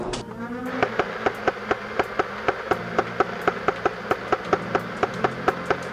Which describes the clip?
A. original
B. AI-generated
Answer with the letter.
A